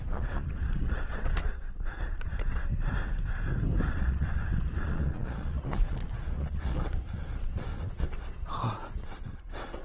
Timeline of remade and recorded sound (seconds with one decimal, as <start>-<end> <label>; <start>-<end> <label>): 0.0-2.6 remade; 2.6-3.9 recorded; 3.9-9.8 remade